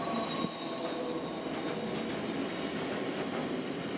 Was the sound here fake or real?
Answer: real